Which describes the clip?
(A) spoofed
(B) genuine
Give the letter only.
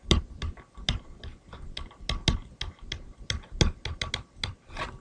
B